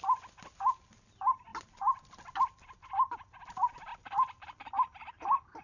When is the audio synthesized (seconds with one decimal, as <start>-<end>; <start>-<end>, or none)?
none